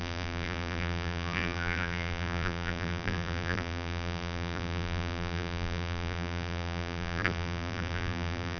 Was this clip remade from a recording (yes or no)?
yes